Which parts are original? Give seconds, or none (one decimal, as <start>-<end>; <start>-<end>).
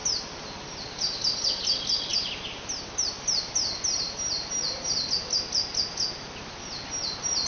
0.0-7.5